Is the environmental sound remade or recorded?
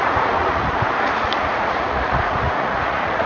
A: remade